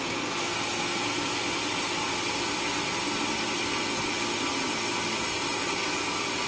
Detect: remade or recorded recorded